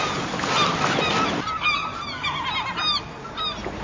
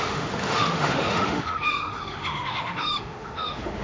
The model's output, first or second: second